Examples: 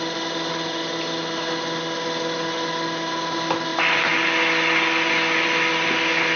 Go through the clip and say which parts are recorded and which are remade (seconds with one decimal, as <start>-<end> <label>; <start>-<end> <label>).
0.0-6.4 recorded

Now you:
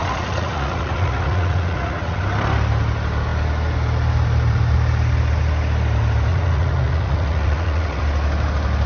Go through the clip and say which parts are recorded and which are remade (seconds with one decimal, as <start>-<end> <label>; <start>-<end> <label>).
0.0-2.2 remade; 2.2-6.3 recorded; 6.3-8.0 remade; 8.0-8.9 recorded

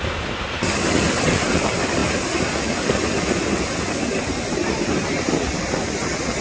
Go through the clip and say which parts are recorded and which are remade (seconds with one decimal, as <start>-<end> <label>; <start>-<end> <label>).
0.0-6.4 recorded

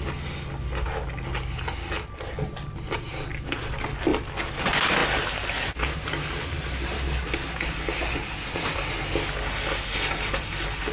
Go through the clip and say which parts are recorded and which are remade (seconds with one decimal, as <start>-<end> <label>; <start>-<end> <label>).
0.0-10.9 recorded

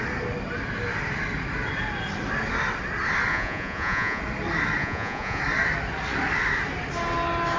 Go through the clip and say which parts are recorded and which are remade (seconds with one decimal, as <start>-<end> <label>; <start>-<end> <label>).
0.0-3.3 recorded; 3.3-4.2 remade; 4.2-4.8 recorded; 4.8-5.4 remade; 5.4-7.6 recorded